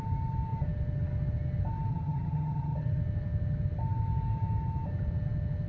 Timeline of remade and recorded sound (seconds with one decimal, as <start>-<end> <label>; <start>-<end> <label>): 0.0-1.9 recorded; 1.9-3.0 remade; 3.0-5.7 recorded